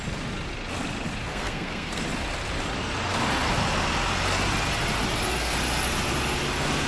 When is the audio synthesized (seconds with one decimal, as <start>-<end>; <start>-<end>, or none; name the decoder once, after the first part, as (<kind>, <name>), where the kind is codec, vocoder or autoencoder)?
1.3-2.0 (codec, SNAC)

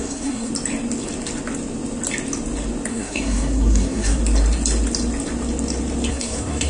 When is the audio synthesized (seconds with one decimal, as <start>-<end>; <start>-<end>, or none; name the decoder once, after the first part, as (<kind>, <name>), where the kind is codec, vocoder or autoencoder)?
0.0-0.5 (codec, SNAC); 2.9-4.2; 6.1-6.7